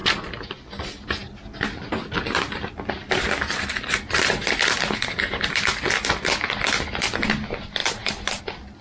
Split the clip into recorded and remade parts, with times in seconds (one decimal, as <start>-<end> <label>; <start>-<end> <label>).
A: 0.0-7.8 recorded; 7.8-8.4 remade; 8.4-8.8 recorded